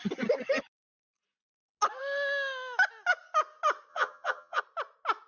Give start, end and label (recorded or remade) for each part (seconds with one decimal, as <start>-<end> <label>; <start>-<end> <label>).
0.0-3.9 recorded; 3.9-4.6 remade; 4.6-5.3 recorded